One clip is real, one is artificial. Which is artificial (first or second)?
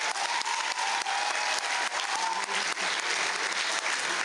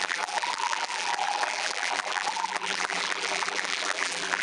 second